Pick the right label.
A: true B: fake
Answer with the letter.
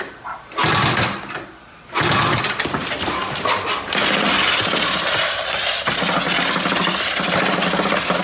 A